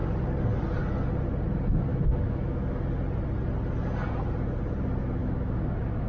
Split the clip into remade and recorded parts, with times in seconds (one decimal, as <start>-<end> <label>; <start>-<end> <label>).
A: 0.0-1.9 recorded; 1.9-2.8 remade; 2.8-5.2 recorded; 5.2-6.1 remade